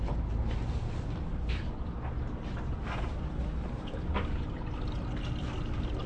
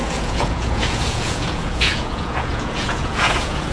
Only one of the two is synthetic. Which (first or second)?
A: second